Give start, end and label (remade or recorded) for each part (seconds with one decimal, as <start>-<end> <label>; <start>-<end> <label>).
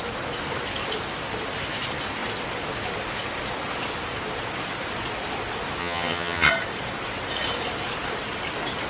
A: 0.0-5.8 recorded; 5.8-6.5 remade; 6.5-8.9 recorded